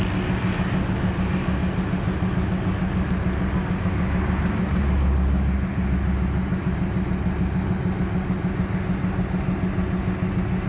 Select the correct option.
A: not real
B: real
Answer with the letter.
B